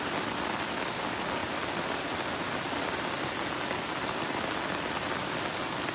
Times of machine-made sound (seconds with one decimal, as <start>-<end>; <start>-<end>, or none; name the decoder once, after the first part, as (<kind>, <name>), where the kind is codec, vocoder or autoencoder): none

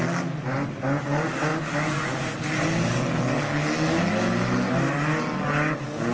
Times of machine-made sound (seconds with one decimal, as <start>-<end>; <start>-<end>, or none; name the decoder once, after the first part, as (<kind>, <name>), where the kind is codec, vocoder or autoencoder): none